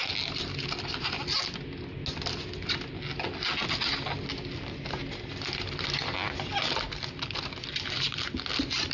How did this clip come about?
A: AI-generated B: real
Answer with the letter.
B